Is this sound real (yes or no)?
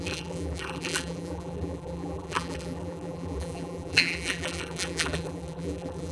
no